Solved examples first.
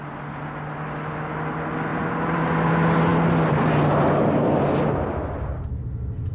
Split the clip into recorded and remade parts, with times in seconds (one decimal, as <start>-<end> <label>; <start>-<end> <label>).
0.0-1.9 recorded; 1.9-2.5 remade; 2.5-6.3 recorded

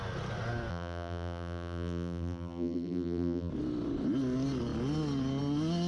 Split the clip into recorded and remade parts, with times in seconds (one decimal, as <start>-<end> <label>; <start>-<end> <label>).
0.0-0.7 recorded; 0.7-3.5 remade; 3.5-5.9 recorded

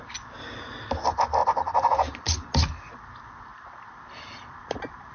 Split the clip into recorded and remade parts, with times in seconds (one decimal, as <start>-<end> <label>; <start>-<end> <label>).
0.0-3.5 recorded; 3.5-5.1 remade

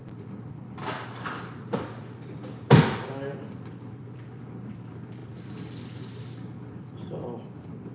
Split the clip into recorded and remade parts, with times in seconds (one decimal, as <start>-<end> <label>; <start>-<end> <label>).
0.0-7.9 remade